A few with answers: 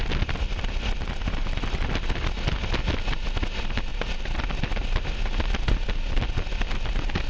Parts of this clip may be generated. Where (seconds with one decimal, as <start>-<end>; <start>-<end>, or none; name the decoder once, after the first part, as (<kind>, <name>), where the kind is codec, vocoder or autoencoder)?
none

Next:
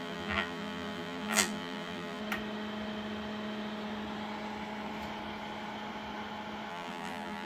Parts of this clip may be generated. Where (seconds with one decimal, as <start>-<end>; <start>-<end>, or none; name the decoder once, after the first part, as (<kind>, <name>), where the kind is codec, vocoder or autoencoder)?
0.0-2.2 (vocoder, BigVGAN v2); 6.7-7.5

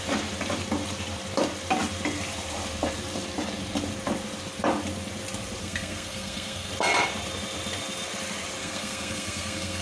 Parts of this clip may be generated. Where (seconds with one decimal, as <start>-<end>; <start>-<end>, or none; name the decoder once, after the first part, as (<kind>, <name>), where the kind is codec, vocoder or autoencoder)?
5.6-6.7 (codec, SNAC); 8.6-9.8